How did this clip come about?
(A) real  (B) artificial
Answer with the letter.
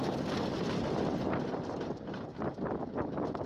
A